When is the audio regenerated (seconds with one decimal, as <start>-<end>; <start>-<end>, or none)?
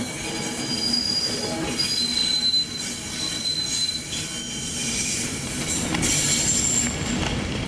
2.2-2.8; 4.8-5.6